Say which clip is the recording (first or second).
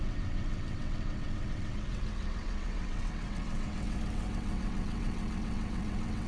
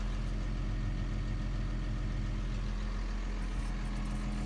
second